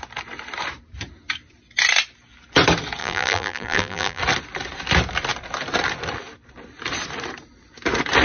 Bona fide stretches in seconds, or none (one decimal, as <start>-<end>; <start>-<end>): 0.0-3.0; 4.2-8.2